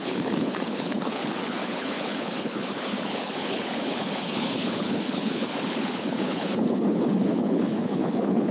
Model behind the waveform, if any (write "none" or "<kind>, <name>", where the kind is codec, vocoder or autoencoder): codec, HILCodec